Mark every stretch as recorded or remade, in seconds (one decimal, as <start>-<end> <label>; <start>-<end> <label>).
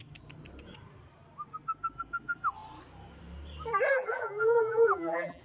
0.0-3.9 recorded; 3.9-5.4 remade